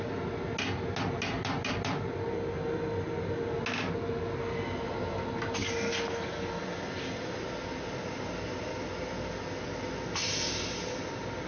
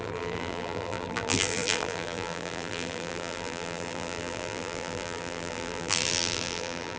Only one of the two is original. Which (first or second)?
first